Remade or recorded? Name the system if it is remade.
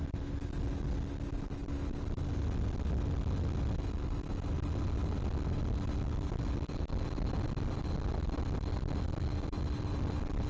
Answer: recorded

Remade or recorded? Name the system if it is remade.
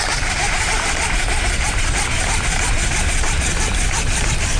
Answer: recorded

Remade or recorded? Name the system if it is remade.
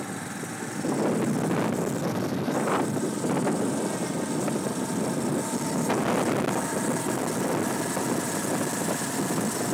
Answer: recorded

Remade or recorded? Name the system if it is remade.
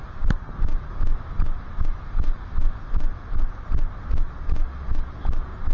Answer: recorded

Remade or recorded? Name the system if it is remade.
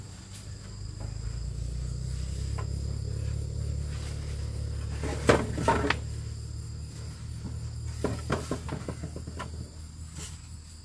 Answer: recorded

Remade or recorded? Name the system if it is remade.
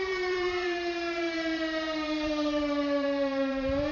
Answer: remade, vocoder, BigVGAN v2